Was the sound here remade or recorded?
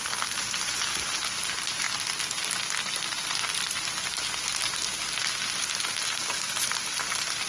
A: recorded